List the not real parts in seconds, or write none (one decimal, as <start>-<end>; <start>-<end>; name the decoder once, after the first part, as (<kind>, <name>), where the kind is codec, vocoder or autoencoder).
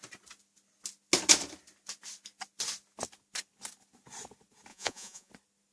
4.7-5.3 (vocoder, Vocos)